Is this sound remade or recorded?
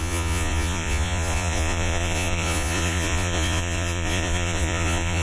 remade